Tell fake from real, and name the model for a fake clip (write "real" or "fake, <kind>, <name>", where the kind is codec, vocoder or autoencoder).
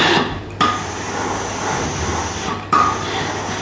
real